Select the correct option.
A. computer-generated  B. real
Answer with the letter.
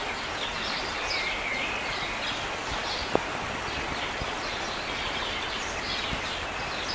B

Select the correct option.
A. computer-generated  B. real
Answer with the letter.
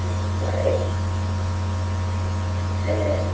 B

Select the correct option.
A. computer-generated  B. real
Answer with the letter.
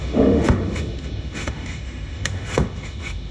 A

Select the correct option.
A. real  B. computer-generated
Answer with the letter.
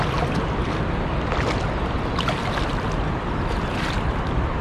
A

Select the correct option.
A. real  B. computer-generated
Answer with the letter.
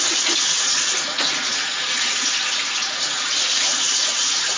B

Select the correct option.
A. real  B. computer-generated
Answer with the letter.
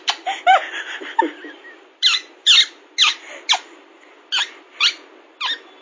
A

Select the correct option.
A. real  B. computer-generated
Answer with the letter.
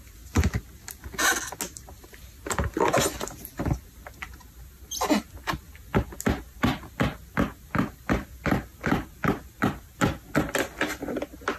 A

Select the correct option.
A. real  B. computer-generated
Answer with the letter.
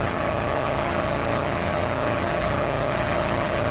B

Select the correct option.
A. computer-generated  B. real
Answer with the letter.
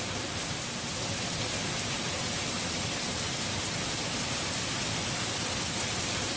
B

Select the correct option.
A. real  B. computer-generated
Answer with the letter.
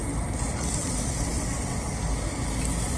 A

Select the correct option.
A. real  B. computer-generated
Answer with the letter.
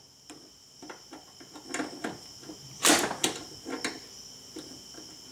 A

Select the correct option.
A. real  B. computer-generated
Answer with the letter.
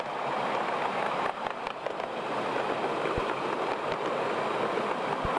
A